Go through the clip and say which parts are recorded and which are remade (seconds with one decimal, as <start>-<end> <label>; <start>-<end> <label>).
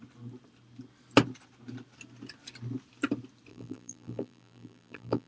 0.0-3.5 recorded; 3.5-5.3 remade